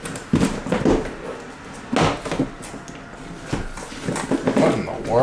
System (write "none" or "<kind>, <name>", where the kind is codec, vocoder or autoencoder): none